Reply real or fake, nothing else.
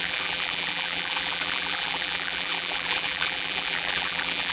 fake